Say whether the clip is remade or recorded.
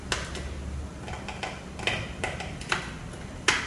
recorded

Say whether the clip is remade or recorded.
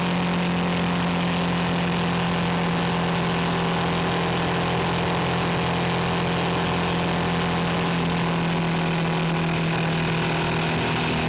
recorded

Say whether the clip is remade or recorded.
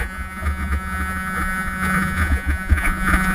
remade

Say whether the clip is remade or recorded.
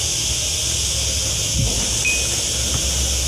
recorded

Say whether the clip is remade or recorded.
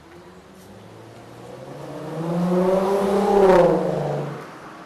recorded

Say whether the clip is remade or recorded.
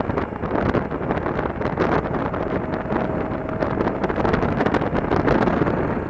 recorded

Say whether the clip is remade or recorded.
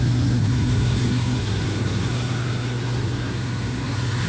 remade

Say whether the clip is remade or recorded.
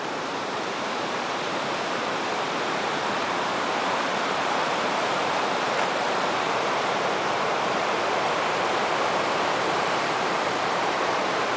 remade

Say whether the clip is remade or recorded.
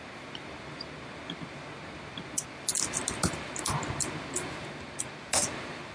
recorded